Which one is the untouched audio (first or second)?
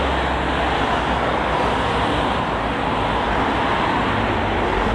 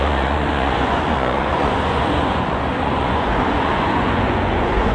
first